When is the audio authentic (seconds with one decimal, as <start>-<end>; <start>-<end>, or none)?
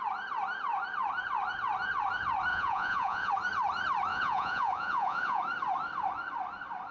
0.0-2.5; 3.3-4.1; 5.4-6.9